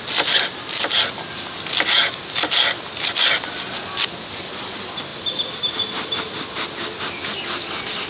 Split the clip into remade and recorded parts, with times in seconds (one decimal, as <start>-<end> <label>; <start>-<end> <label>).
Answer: 0.0-8.1 recorded